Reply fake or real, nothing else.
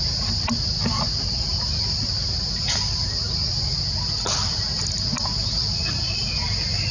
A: real